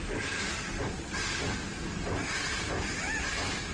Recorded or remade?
recorded